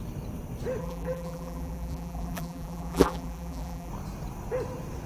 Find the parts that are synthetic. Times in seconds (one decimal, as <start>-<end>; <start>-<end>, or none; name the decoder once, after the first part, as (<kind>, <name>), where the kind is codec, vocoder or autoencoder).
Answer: 0.8-3.9 (vocoder, BigVGAN v2)